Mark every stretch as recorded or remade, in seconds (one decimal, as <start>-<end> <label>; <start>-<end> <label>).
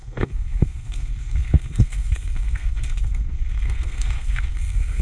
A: 0.0-5.0 remade